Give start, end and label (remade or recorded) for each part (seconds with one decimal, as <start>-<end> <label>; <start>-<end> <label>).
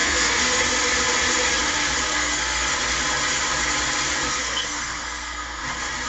0.0-0.6 remade; 0.6-2.1 recorded; 2.1-2.7 remade; 2.7-4.4 recorded; 4.4-5.6 remade; 5.6-6.1 recorded